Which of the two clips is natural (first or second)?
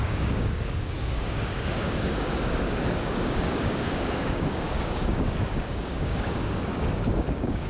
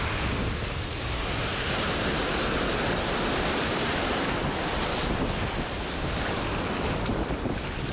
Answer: second